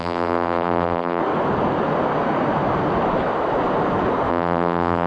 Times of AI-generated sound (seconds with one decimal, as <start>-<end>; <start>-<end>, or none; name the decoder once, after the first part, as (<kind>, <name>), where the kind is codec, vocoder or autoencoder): 0.0-1.2 (vocoder, BigVGAN v2); 4.3-5.1